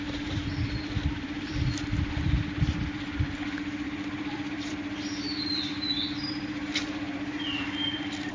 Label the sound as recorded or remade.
remade